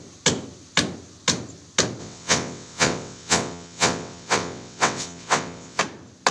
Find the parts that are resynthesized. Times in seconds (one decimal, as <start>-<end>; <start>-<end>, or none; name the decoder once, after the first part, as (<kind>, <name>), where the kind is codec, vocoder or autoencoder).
2.0-5.8 (vocoder, WaveNeXt)